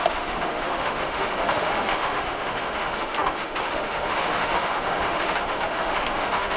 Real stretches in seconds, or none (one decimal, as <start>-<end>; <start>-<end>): none